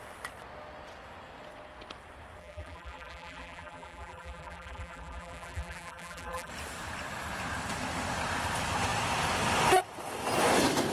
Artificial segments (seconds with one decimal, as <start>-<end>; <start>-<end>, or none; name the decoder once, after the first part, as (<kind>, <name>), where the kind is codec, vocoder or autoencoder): 2.4-6.5 (vocoder, BigVGAN v2)